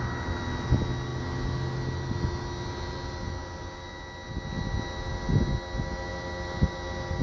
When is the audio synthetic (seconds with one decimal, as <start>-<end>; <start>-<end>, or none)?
none